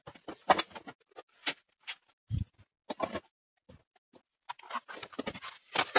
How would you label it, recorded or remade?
recorded